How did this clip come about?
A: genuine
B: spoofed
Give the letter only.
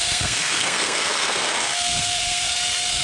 B